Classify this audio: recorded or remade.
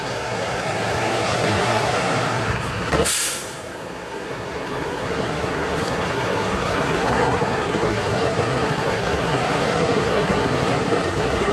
remade